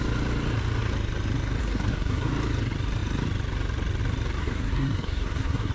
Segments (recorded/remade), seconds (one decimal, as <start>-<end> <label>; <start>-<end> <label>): 0.0-1.6 recorded; 1.6-2.3 remade; 2.3-4.4 recorded; 4.4-5.7 remade